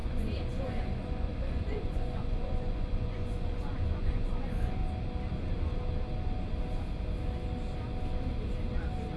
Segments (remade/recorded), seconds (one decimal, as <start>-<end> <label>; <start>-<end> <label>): 0.0-4.8 remade; 4.8-9.2 recorded